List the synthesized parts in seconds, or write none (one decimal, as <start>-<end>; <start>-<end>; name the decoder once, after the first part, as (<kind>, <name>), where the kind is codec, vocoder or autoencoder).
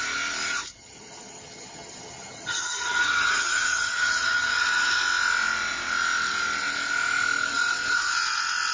0.8-5.0 (vocoder, HiFi-GAN)